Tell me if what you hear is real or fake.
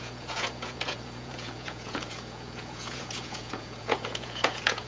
fake